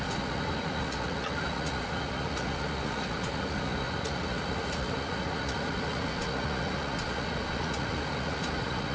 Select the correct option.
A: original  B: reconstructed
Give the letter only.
B